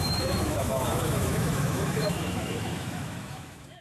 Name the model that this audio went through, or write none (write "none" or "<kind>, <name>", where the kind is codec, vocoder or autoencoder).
autoencoder, DAC-VAE